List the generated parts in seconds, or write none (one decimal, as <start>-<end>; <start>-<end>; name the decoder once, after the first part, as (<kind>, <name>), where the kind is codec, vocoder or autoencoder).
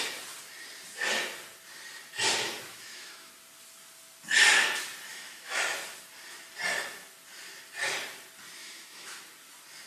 2.7-3.3 (autoencoder, DAC-VAE); 5.1-5.6; 8.6-9.2